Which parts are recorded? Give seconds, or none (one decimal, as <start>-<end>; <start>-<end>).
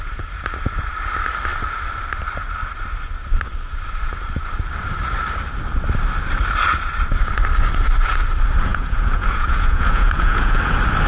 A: 0.0-8.7; 10.6-11.1